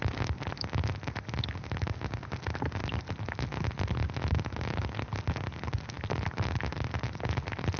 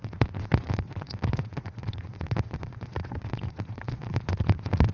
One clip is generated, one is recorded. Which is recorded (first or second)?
first